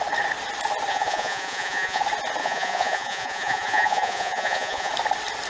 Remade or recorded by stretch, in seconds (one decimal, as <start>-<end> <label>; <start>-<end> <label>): 0.0-0.9 recorded; 0.9-2.0 remade; 2.0-2.4 recorded; 2.4-4.9 remade; 4.9-5.5 recorded